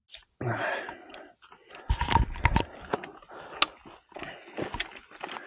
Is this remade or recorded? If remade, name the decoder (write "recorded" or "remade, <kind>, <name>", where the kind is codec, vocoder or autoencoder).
recorded